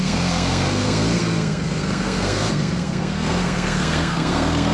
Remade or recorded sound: remade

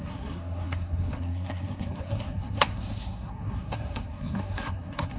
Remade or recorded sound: remade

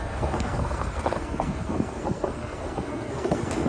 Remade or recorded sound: remade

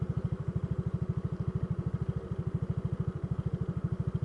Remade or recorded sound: recorded